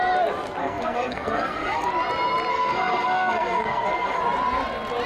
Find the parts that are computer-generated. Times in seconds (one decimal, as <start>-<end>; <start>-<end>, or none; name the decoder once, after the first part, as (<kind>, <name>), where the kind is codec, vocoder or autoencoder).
0.6-1.9 (codec, SNAC); 2.5-4.2